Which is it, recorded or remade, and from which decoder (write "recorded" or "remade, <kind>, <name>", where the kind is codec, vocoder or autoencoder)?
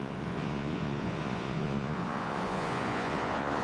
remade, vocoder, Vocos